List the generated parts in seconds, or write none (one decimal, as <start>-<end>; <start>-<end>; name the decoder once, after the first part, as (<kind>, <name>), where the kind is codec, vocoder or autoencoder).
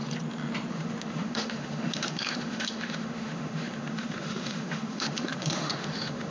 0.7-6.3 (autoencoder, DAC-VAE)